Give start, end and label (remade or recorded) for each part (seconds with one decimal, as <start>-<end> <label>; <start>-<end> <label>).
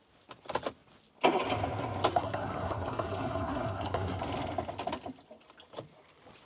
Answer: 0.0-2.1 recorded; 2.1-4.2 remade; 4.2-6.5 recorded